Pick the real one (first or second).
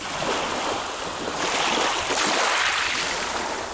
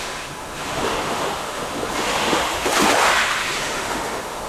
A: first